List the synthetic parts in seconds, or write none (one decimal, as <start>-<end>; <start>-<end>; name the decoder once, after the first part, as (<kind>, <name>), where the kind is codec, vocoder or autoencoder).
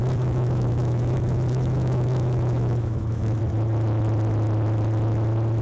0.0-3.4 (autoencoder, DAC-VAE)